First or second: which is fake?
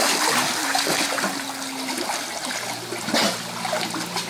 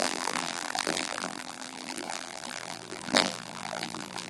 second